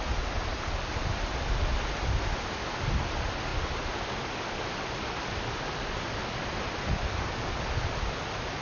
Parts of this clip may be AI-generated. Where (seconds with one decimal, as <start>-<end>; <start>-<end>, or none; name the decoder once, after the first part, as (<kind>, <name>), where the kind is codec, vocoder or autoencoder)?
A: none